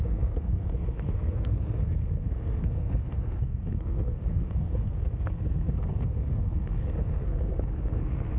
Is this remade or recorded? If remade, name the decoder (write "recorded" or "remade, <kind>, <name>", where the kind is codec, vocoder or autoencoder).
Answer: remade, codec, SNAC